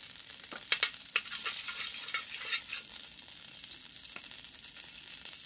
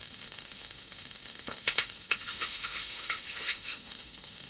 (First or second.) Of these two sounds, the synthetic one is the second